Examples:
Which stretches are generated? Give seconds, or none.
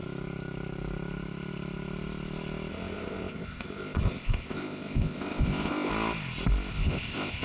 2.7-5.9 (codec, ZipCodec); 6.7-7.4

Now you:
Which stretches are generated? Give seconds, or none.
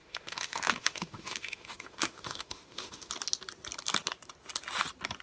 0.0-3.1 (autoencoder, DAC-VAE)